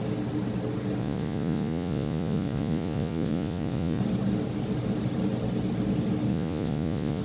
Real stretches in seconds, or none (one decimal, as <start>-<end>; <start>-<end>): 0.0-1.0; 4.0-6.3